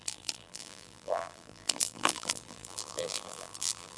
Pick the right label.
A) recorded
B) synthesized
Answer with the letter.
B